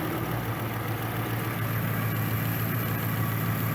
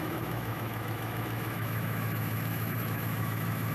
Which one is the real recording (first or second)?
first